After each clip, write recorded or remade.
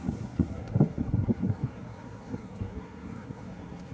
remade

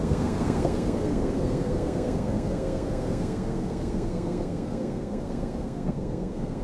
remade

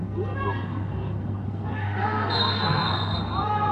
remade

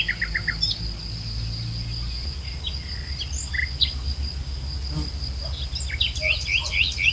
recorded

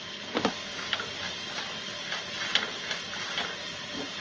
recorded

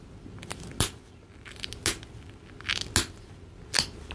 recorded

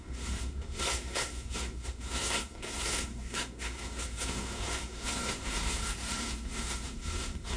remade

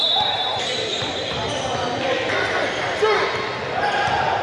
recorded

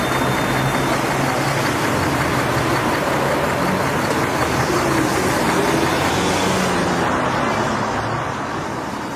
recorded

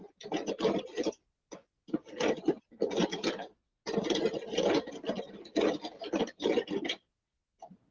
recorded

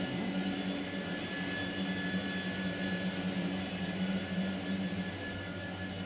recorded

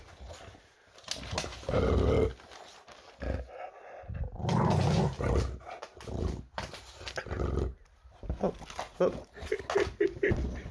recorded